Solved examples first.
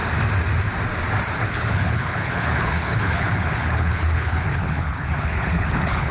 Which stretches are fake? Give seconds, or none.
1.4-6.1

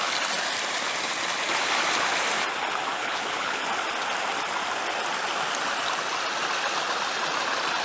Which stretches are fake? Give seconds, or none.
3.0-3.7

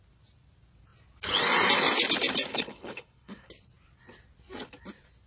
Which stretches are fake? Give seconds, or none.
2.5-3.5